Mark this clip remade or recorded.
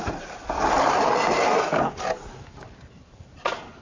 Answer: recorded